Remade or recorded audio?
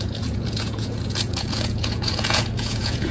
remade